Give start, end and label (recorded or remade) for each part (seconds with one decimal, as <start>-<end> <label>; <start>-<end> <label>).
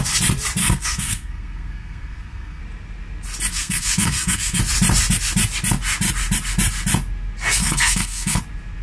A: 0.0-0.6 recorded; 0.6-2.6 remade; 2.6-3.5 recorded; 3.5-4.6 remade; 4.6-7.6 recorded; 7.6-8.4 remade; 8.4-8.8 recorded